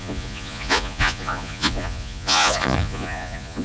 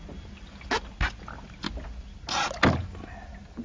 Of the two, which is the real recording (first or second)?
second